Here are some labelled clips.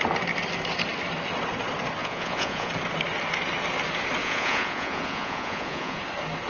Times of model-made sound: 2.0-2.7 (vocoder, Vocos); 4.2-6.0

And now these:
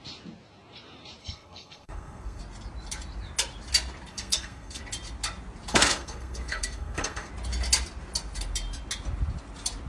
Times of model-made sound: 1.2-2.4 (codec, SNAC); 4.1-4.8; 5.7-7.3

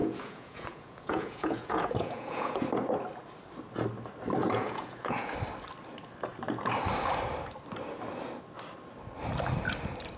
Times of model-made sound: 0.0-2.6 (vocoder, Vocos); 4.4-5.3

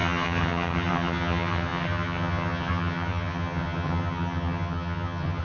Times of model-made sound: 0.0-5.4 (vocoder, HiFi-GAN)

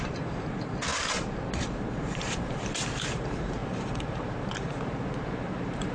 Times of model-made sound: 0.0-5.9 (vocoder, BigVGAN v2)

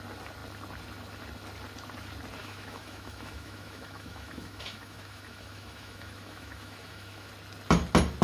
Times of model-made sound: 2.4-7.3 (autoencoder, DAC-VAE)

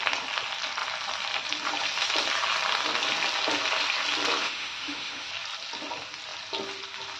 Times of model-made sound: 4.4-5.3 (autoencoder, DAC-VAE)